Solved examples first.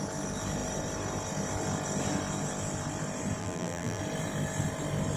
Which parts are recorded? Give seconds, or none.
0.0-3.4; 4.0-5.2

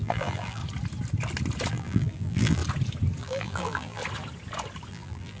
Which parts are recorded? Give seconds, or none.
0.6-1.7; 2.6-3.2; 4.0-4.9

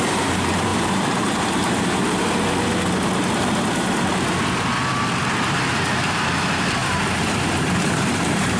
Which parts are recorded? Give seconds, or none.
2.0-5.7